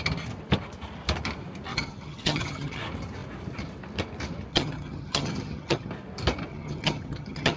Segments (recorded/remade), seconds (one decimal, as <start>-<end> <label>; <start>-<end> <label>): 0.0-1.7 recorded; 1.7-2.8 remade; 2.8-4.5 recorded; 4.5-5.9 remade; 5.9-6.5 recorded; 6.5-7.6 remade